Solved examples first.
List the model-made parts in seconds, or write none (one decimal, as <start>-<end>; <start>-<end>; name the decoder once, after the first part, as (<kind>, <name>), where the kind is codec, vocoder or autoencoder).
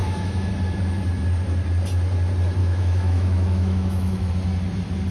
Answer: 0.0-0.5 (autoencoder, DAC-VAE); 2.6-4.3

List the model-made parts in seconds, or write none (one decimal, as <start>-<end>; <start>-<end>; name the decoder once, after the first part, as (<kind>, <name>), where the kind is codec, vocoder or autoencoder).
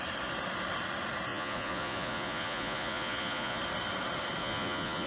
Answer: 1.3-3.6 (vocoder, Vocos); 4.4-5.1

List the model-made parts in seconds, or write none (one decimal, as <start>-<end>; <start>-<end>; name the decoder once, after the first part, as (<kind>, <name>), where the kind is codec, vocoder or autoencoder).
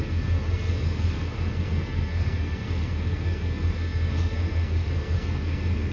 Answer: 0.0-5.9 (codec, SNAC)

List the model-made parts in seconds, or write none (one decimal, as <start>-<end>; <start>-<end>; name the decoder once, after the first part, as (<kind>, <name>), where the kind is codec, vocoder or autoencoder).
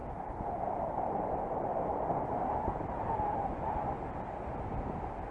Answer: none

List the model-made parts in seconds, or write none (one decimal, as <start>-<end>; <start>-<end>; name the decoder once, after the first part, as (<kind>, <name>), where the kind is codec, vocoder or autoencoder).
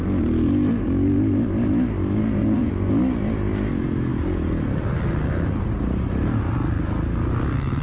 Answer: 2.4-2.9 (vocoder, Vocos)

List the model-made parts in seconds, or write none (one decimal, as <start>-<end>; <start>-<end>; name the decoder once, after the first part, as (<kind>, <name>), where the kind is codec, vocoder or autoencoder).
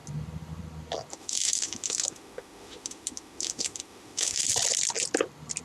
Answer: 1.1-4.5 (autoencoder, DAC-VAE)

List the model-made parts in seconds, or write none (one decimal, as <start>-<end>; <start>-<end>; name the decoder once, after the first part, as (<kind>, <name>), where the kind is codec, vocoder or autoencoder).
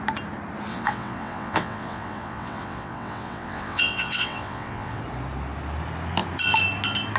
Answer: 0.7-5.0 (vocoder, WaveNeXt)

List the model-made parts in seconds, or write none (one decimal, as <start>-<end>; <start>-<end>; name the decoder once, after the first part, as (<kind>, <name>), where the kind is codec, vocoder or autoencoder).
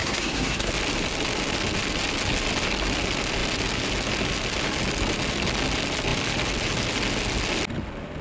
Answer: 0.0-0.7 (codec, SNAC)